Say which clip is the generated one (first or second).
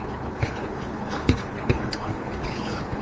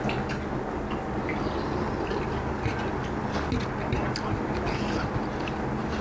first